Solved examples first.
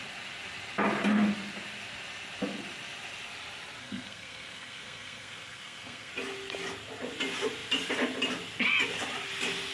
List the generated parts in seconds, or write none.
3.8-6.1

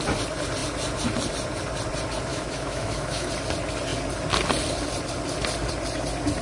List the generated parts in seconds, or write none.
2.3-3.3

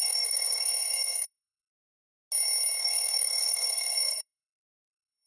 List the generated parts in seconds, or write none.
0.0-1.7; 2.8-5.3

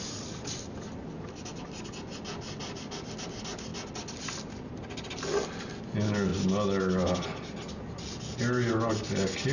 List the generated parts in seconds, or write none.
none

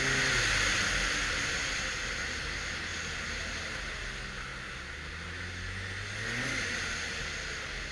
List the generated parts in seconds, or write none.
none

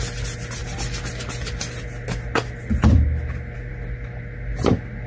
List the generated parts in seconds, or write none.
none